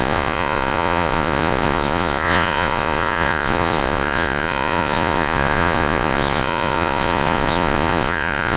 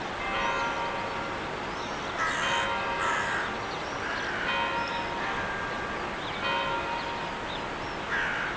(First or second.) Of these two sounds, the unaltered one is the second